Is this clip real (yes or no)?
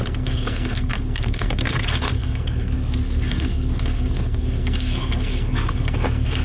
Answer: no